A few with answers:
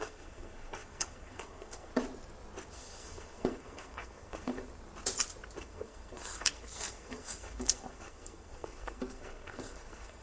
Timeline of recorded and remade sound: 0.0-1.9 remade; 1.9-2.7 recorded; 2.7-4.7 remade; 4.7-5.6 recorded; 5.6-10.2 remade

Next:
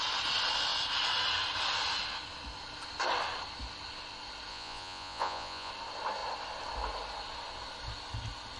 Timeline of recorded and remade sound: 0.0-4.5 recorded; 4.5-5.7 remade; 5.7-8.6 recorded

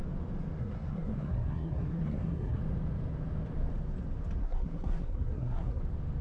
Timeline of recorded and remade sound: 0.0-0.6 recorded; 0.6-2.6 remade; 2.6-4.4 recorded; 4.4-5.8 remade; 5.8-6.2 recorded